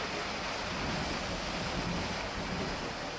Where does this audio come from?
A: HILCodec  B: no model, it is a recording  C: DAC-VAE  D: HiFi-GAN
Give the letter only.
B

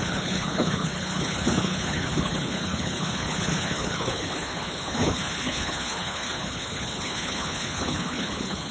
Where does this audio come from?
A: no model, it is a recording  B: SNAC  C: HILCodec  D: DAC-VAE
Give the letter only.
C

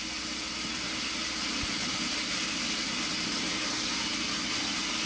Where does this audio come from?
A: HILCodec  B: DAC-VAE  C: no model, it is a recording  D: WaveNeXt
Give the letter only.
C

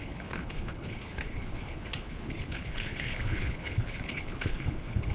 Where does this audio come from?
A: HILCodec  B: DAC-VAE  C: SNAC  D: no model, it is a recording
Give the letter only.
A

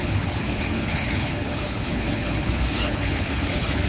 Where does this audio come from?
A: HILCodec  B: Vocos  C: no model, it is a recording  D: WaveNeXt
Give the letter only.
A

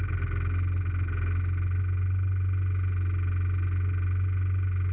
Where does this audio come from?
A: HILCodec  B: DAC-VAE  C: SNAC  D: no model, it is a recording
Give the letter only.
D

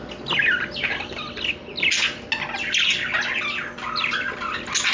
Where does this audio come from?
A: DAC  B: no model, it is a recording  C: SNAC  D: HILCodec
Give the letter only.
B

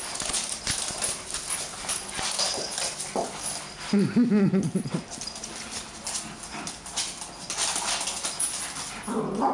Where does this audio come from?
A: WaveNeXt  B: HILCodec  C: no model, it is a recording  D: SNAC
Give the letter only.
C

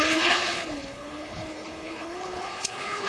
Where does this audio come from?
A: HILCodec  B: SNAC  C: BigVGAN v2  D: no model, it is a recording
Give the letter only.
A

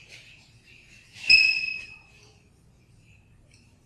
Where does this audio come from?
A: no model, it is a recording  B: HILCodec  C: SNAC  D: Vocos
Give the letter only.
A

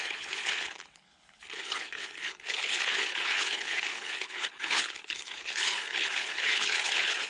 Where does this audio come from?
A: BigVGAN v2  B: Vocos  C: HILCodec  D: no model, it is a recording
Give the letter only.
C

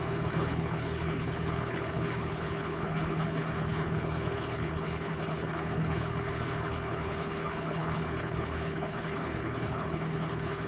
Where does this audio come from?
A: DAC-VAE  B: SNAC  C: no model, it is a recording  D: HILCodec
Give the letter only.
D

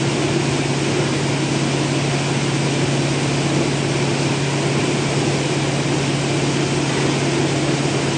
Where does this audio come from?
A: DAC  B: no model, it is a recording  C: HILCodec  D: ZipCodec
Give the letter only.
B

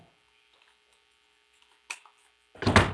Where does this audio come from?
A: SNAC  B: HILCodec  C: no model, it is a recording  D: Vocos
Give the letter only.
C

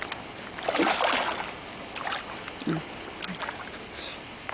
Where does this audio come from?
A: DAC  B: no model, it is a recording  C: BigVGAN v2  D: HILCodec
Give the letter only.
B